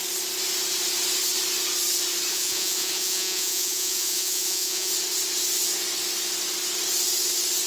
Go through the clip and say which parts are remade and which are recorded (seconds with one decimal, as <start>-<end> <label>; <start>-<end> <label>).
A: 0.0-2.3 recorded; 2.3-4.9 remade; 4.9-7.7 recorded